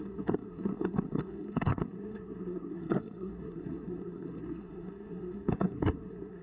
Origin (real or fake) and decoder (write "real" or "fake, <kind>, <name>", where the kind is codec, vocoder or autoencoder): fake, codec, SNAC